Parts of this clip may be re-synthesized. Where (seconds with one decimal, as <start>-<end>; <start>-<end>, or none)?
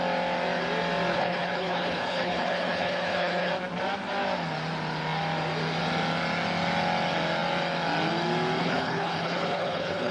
1.1-3.5; 8.6-10.1